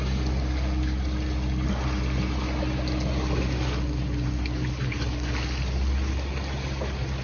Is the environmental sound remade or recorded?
recorded